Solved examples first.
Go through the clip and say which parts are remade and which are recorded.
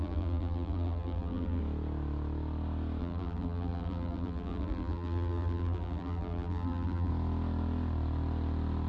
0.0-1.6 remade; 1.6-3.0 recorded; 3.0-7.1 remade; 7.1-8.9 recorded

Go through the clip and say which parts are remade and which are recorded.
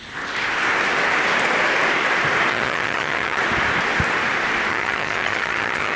0.0-2.5 recorded; 2.5-3.4 remade; 3.4-4.7 recorded; 4.7-6.0 remade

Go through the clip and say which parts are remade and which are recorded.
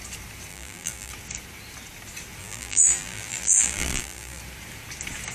0.0-0.5 recorded; 0.5-1.1 remade; 1.1-2.4 recorded; 2.4-4.4 remade; 4.4-5.3 recorded